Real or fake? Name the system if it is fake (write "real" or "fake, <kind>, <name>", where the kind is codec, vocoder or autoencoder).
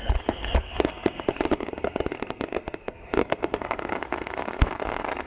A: fake, codec, SNAC